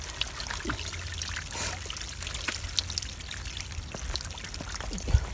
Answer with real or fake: real